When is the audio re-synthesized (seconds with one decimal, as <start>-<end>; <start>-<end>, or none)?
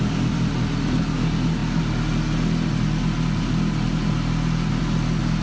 none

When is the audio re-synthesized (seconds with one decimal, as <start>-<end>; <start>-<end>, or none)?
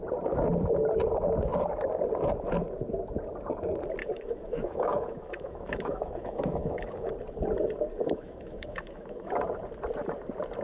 4.0-7.1; 8.0-9.3